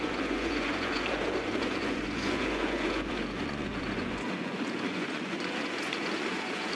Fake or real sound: fake